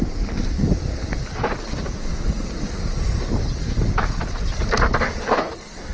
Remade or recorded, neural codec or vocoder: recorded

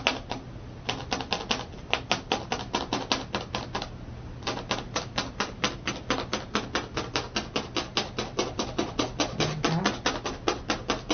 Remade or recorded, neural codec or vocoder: recorded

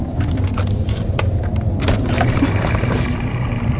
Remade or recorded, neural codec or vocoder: remade, vocoder, BigVGAN v2